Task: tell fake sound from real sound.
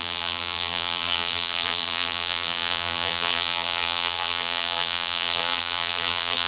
fake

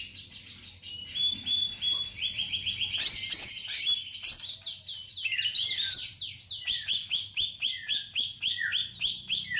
real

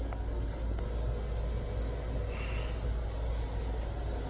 real